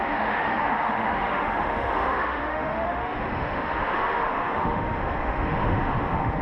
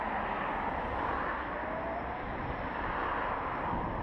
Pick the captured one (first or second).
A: second